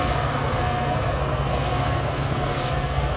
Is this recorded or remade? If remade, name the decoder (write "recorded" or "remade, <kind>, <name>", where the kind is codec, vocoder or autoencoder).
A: remade, codec, SNAC